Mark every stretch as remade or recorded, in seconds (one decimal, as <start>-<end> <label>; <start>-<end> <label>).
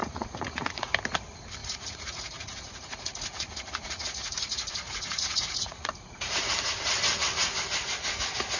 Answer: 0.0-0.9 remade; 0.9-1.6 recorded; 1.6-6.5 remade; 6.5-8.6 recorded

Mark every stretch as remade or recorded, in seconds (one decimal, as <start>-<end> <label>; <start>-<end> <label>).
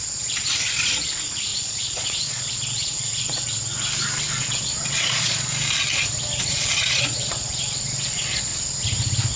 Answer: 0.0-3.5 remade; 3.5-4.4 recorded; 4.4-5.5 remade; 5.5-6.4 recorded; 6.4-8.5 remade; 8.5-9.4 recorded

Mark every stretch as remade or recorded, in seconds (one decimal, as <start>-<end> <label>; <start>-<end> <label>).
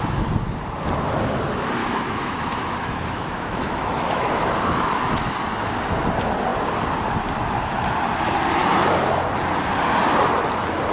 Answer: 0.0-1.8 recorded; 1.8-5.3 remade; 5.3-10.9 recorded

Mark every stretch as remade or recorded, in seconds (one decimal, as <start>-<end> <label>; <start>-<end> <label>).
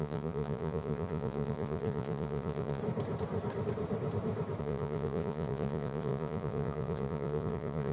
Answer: 0.0-2.8 remade; 2.8-4.6 recorded; 4.6-7.9 remade